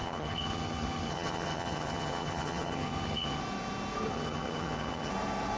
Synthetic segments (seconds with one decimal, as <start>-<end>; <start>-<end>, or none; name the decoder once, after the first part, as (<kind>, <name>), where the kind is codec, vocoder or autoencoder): 0.0-3.4 (vocoder, HiFi-GAN); 4.1-5.1